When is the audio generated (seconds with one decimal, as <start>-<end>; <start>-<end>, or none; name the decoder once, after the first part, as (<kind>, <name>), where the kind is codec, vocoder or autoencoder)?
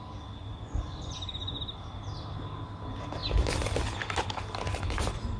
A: 0.4-1.6 (vocoder, Vocos)